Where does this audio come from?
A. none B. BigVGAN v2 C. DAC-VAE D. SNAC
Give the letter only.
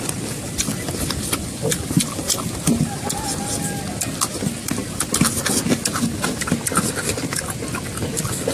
A